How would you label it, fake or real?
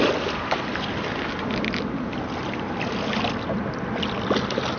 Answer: real